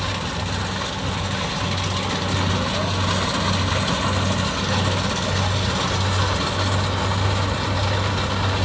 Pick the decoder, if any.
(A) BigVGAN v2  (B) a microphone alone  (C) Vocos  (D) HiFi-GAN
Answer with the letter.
B